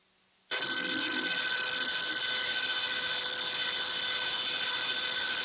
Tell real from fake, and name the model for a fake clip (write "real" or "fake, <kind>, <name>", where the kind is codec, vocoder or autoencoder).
real